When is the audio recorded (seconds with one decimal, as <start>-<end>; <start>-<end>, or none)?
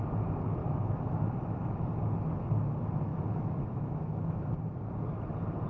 0.0-0.6; 2.0-3.1; 4.5-5.7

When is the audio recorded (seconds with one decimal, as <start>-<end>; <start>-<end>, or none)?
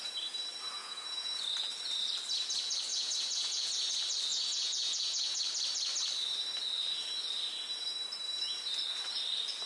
0.0-0.8; 1.4-2.9; 3.9-4.3; 5.4-9.7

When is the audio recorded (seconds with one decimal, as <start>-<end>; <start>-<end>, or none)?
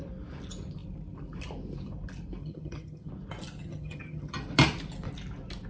0.0-2.4; 3.1-3.6; 4.4-5.7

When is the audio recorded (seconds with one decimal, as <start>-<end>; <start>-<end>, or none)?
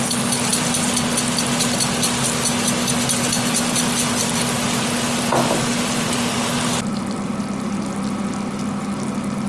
0.0-9.5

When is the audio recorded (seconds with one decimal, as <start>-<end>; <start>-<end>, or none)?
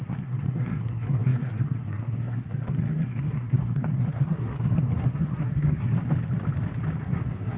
5.9-7.0